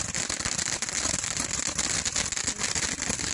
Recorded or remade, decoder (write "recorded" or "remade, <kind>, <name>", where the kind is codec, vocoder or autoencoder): recorded